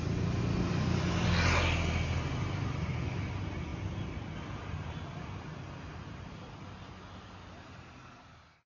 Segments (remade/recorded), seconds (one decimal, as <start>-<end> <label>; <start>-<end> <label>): 0.0-8.7 recorded